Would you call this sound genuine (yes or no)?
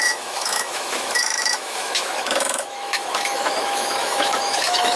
no